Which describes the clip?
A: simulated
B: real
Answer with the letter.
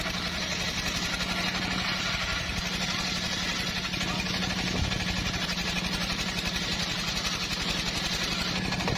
B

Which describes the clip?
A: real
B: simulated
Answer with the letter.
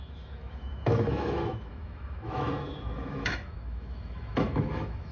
B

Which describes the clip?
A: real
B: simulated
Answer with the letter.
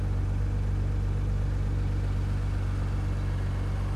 A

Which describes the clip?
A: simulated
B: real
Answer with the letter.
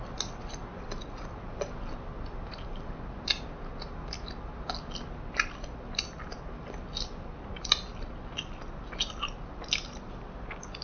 B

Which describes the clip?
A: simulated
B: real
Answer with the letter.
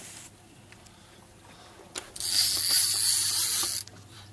B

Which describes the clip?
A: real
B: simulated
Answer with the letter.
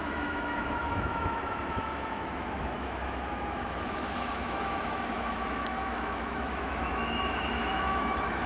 B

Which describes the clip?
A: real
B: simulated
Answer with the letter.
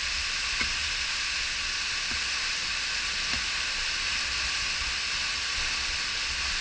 A